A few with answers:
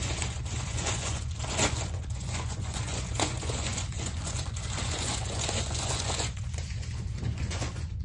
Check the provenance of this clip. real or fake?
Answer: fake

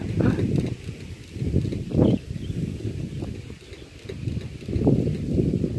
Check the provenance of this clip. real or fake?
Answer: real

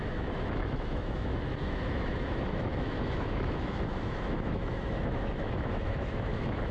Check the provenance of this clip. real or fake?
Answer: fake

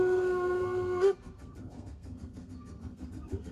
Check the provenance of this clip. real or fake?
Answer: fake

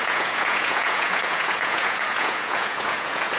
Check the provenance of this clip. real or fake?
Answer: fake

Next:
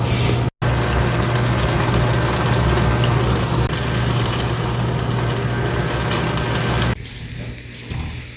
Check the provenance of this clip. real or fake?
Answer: real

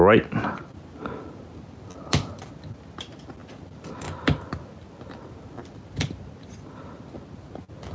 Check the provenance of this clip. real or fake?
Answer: real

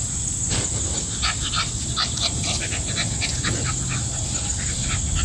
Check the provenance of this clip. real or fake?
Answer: real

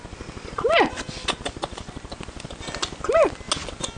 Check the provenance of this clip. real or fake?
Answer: real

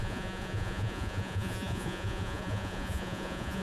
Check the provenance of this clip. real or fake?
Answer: fake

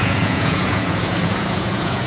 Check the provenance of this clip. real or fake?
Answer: fake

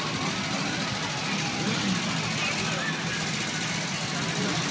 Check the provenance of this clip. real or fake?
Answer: real